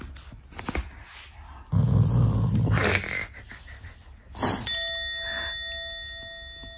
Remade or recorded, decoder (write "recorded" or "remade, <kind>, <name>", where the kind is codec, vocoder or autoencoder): recorded